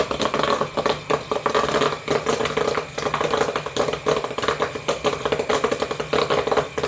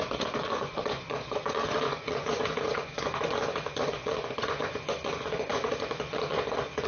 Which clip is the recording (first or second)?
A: first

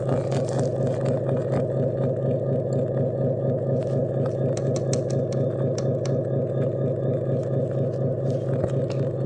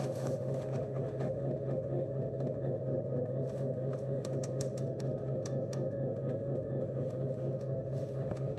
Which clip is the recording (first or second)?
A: first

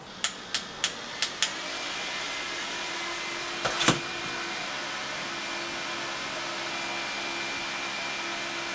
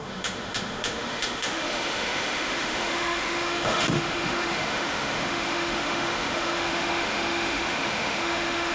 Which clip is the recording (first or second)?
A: first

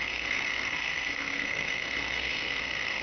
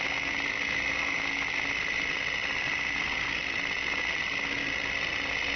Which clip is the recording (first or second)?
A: second